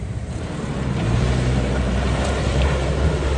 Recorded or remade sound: remade